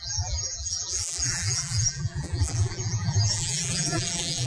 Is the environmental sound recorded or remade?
remade